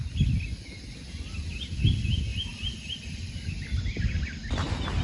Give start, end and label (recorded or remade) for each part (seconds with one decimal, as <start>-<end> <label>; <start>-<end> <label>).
0.0-2.3 recorded; 2.3-3.3 remade; 3.3-5.0 recorded

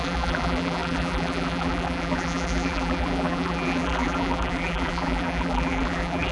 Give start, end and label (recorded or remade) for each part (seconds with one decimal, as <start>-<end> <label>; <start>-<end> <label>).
0.0-6.3 remade